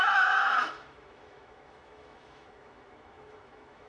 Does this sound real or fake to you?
fake